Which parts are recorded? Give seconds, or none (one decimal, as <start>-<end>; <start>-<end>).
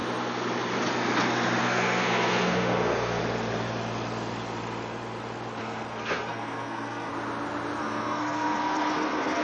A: 0.0-1.6; 3.2-5.6; 7.1-7.8